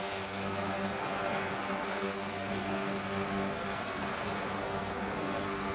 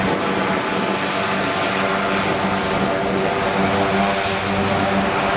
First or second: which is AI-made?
first